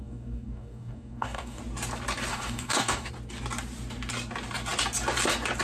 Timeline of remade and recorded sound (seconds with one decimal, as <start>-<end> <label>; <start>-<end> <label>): 0.0-1.6 remade; 1.6-2.3 recorded; 2.3-3.1 remade; 3.1-5.6 recorded

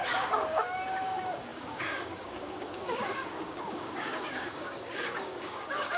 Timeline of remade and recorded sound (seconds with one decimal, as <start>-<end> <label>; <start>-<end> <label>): 0.0-6.0 remade

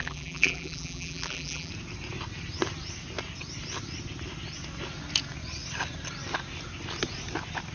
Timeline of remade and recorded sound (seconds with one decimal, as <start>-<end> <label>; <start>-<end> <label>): 0.0-1.7 remade; 1.7-7.7 recorded